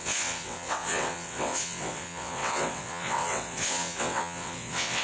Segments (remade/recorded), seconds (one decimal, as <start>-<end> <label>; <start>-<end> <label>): 0.0-5.0 remade